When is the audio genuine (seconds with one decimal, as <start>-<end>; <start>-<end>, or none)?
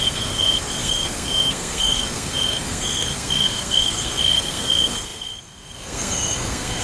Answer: none